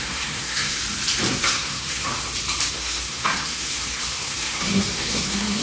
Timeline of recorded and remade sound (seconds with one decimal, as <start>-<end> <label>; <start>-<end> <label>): 0.0-0.8 remade; 0.8-1.3 recorded; 1.3-2.1 remade; 2.1-2.7 recorded; 2.7-5.6 remade